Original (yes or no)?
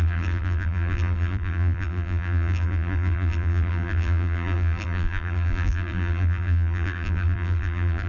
no